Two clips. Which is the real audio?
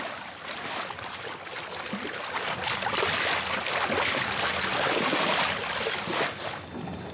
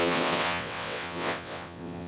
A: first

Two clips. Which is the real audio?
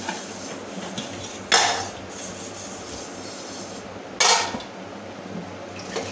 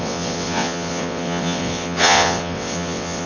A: first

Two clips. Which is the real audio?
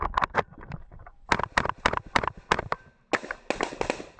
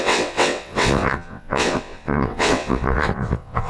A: first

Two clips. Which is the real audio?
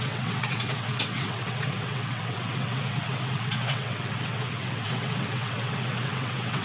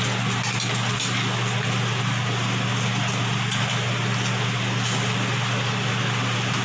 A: second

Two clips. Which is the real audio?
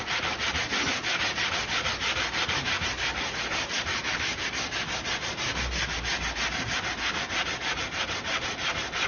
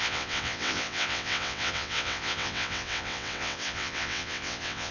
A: first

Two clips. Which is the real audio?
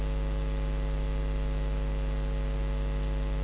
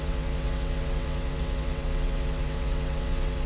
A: first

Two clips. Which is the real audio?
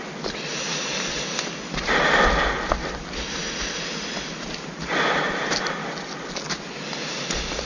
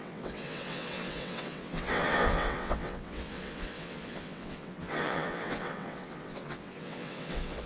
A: first